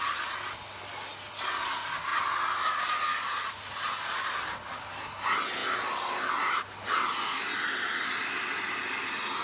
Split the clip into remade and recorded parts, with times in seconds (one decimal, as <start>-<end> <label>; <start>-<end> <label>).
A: 0.0-9.4 recorded